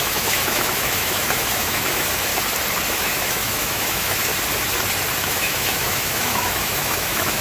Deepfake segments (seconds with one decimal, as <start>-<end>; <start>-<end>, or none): 0.0-2.3; 2.9-4.3; 5.2-7.4